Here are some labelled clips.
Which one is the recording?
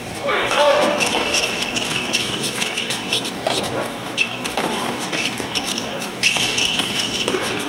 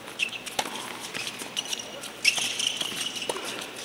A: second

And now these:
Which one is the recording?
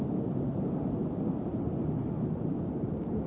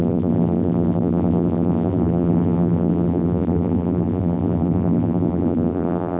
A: first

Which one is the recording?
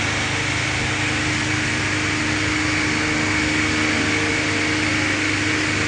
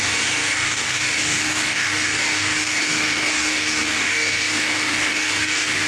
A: first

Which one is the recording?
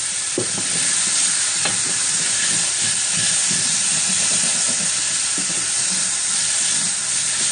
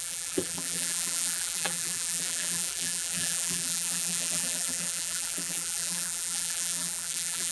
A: first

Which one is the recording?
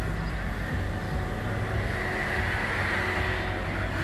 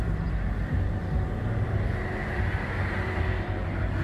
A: first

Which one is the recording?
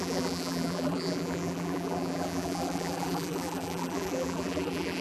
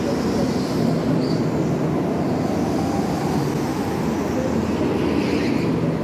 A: second